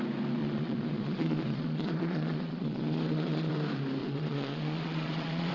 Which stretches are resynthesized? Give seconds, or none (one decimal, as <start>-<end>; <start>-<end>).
0.4-3.5; 4.0-5.5